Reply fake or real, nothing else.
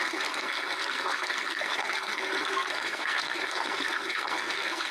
fake